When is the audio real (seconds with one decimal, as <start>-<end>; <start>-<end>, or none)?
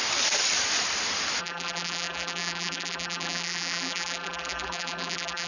0.0-1.4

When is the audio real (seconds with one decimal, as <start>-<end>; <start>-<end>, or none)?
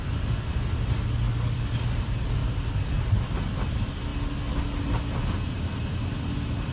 0.0-6.7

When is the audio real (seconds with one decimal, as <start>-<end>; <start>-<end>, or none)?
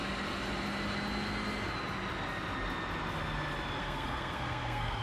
0.0-3.8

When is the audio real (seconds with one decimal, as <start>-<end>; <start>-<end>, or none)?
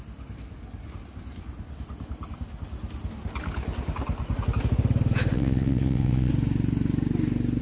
0.0-5.3; 6.3-7.6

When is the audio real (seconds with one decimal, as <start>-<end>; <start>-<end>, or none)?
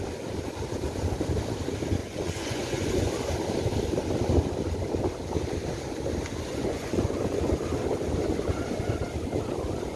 0.0-2.0; 3.1-6.5; 7.5-10.0